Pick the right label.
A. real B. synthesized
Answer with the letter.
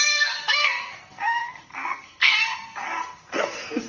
B